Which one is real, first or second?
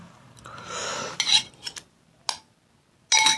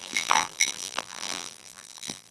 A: first